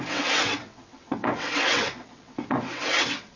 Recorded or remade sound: remade